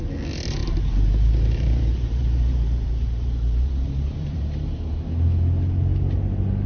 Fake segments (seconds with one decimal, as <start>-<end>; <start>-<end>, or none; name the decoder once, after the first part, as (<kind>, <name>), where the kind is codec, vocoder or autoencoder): 0.6-4.4 (vocoder, BigVGAN v2)